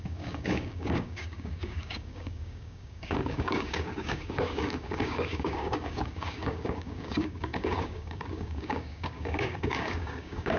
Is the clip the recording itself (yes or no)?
no